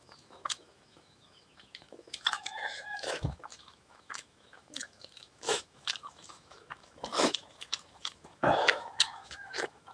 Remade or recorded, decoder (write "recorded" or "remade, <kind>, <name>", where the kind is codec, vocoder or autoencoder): remade, autoencoder, DAC-VAE